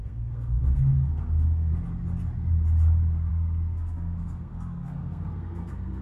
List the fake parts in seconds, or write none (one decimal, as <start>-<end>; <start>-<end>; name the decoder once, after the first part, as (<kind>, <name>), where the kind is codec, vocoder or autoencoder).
0.0-1.7 (codec, SNAC); 3.3-6.0